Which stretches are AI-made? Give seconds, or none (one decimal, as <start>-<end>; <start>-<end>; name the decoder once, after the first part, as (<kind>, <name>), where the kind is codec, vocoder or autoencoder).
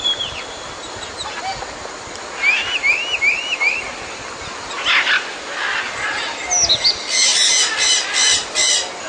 none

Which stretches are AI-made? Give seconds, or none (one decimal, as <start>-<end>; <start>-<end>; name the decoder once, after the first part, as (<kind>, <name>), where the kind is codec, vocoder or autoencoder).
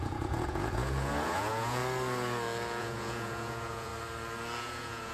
0.0-1.8 (vocoder, Vocos); 2.8-3.9; 4.6-5.1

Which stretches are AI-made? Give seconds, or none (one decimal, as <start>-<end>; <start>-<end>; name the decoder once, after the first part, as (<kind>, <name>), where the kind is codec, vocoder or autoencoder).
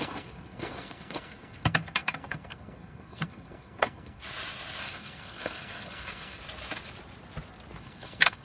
0.0-4.2 (codec, SNAC); 4.8-6.4; 7.8-8.4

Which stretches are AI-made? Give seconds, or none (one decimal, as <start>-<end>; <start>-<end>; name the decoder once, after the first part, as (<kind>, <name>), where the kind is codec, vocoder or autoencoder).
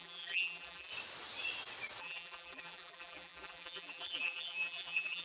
0.0-0.9 (vocoder, BigVGAN v2); 2.0-5.2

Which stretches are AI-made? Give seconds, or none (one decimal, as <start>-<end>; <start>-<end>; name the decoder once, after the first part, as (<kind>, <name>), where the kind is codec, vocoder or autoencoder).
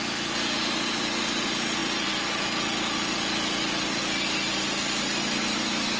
5.2-6.0 (autoencoder, DAC-VAE)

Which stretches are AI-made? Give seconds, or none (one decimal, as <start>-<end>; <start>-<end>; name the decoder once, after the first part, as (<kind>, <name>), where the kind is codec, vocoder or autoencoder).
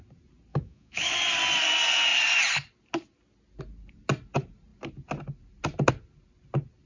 0.5-1.1 (autoencoder, DAC-VAE)